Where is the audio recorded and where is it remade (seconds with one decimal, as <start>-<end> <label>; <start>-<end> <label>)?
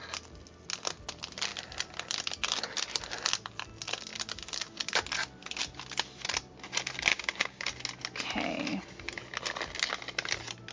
0.0-7.1 recorded; 7.1-7.7 remade; 7.7-10.7 recorded